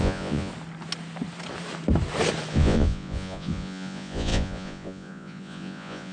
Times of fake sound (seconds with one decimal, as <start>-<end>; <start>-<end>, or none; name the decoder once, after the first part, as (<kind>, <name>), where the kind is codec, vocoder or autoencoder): 0.0-0.5 (vocoder, Vocos); 2.5-6.1